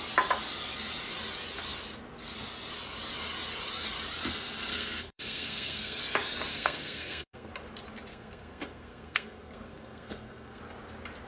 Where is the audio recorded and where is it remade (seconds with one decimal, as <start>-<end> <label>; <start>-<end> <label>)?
0.0-4.7 recorded; 4.7-6.0 remade; 6.0-6.5 recorded; 6.5-7.5 remade; 7.5-8.1 recorded; 8.1-10.6 remade; 10.6-11.3 recorded